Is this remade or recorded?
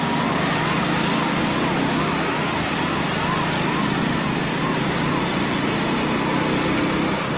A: recorded